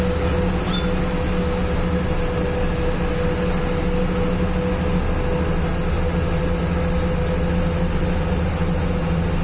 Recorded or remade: recorded